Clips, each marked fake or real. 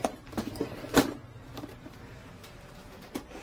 fake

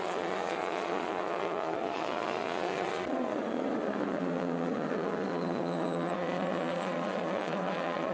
fake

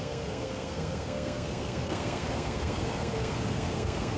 fake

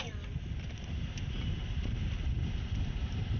real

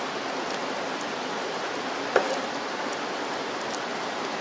real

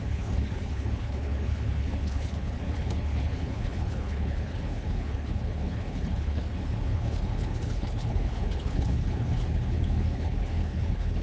fake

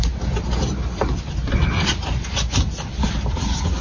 fake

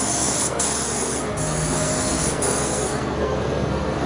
fake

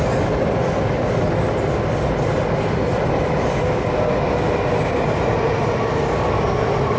real